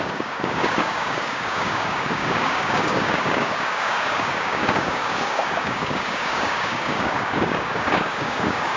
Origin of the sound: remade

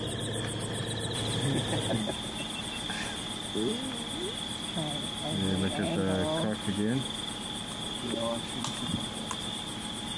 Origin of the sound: recorded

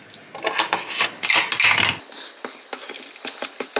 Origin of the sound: recorded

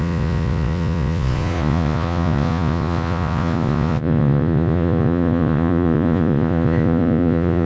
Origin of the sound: remade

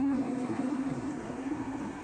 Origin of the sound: remade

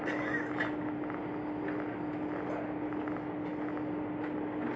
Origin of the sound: recorded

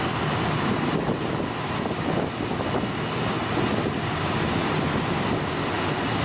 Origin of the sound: recorded